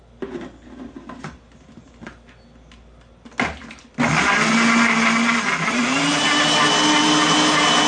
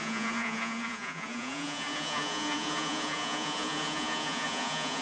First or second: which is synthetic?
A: second